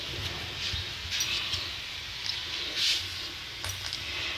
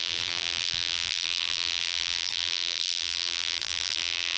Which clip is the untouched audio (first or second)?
first